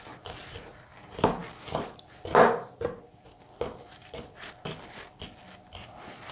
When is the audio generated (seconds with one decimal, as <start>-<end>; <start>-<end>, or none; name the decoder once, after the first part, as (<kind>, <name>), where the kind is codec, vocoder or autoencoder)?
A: none